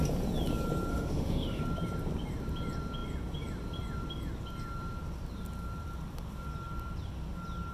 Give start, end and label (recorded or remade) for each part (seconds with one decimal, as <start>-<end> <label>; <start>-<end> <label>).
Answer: 0.0-0.9 recorded; 0.9-1.6 remade; 1.6-7.7 recorded

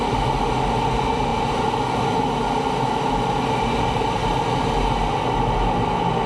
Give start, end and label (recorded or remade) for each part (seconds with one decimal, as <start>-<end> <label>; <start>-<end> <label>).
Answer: 0.0-6.3 recorded